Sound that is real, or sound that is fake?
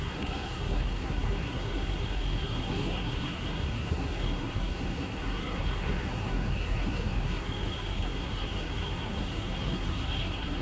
fake